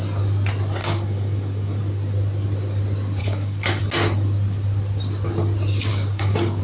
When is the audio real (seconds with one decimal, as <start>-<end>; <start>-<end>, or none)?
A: 0.0-0.8; 1.8-3.2; 3.8-5.9